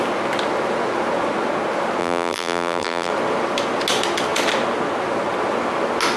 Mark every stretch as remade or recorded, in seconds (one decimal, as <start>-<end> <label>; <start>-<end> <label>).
0.0-2.0 recorded; 2.0-3.1 remade; 3.1-6.2 recorded